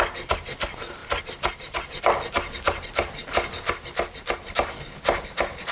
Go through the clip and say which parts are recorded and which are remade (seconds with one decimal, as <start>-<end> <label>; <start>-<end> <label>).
0.0-5.7 recorded